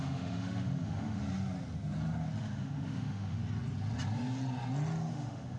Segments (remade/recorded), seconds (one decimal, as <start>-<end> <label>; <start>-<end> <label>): 0.0-1.2 remade; 1.2-2.4 recorded; 2.4-3.4 remade; 3.4-5.1 recorded; 5.1-5.6 remade